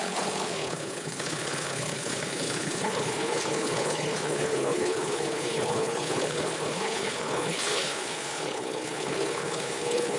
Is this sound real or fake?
fake